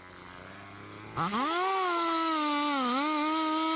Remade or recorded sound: recorded